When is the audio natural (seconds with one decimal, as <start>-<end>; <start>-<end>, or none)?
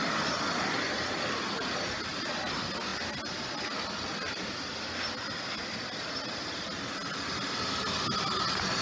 0.0-8.8